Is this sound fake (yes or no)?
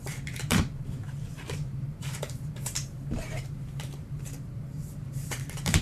yes